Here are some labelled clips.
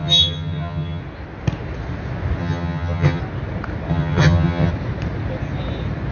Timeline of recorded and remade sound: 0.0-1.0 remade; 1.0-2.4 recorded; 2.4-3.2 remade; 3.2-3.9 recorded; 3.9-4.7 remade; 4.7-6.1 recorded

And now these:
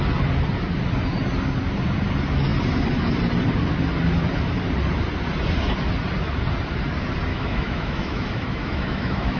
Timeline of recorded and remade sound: 0.0-7.3 recorded; 7.3-9.4 remade

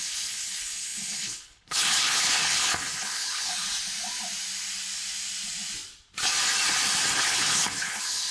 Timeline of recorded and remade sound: 0.0-3.5 remade; 3.5-7.2 recorded; 7.2-8.3 remade